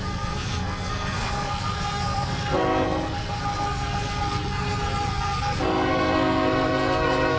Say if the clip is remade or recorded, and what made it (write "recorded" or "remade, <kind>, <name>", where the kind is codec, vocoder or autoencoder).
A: remade, codec, SNAC